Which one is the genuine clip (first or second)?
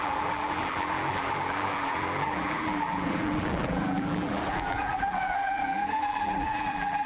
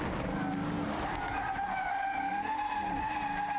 second